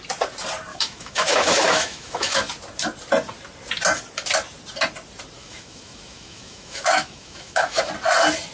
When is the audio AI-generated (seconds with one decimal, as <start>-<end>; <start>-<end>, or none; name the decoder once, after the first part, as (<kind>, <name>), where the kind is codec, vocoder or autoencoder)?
0.7-2.4 (autoencoder, DAC-VAE); 5.4-7.8